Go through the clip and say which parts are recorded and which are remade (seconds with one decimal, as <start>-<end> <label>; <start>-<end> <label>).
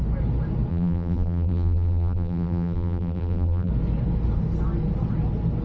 0.0-0.7 recorded; 0.7-3.7 remade; 3.7-5.6 recorded